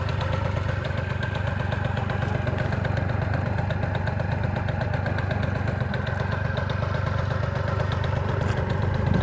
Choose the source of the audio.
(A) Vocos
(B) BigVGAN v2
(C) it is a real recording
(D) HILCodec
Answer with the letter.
C